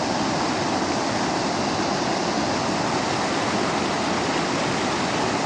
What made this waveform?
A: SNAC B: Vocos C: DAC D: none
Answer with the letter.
D